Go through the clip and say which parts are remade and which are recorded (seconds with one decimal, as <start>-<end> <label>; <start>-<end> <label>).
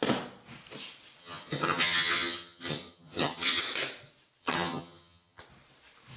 0.0-1.2 recorded; 1.2-3.6 remade; 3.6-4.4 recorded; 4.4-5.4 remade; 5.4-6.2 recorded